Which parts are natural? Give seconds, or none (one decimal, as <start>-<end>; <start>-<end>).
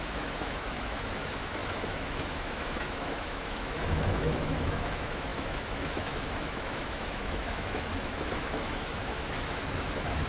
none